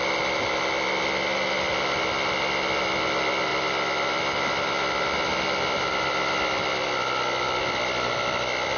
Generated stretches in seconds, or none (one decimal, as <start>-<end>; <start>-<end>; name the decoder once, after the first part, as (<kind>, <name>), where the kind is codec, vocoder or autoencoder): none